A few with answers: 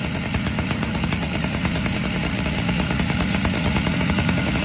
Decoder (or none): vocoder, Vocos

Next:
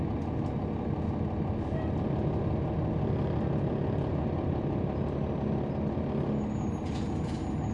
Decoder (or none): none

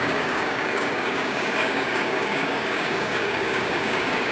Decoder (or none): codec, DAC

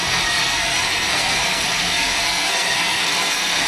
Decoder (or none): codec, SNAC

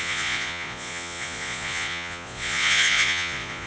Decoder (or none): vocoder, Vocos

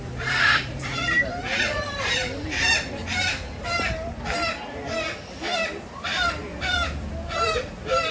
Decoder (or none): vocoder, BigVGAN v2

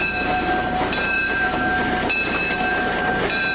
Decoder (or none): vocoder, BigVGAN v2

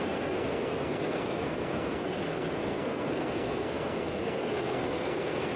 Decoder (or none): codec, SNAC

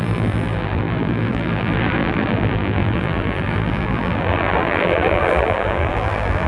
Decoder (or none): vocoder, BigVGAN v2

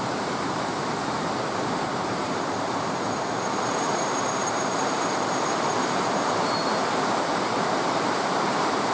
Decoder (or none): vocoder, BigVGAN v2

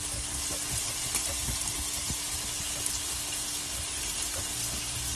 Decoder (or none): none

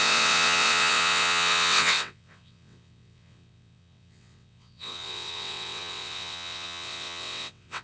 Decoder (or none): vocoder, WaveNeXt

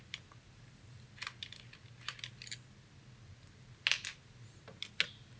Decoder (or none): none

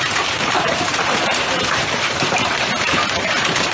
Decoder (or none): vocoder, BigVGAN v2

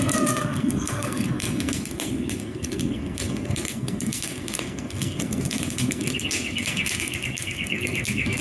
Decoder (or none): codec, SNAC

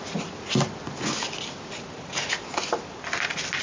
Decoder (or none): none